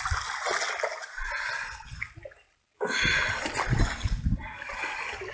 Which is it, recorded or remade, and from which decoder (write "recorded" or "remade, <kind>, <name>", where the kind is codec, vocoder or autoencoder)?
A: recorded